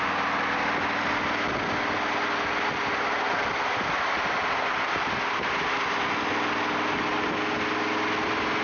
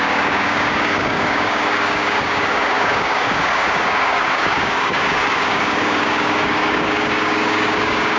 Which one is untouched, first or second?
first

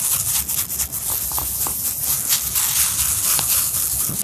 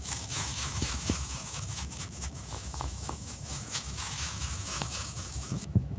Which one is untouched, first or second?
first